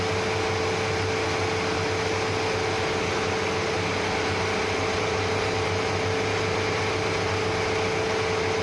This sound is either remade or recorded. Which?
recorded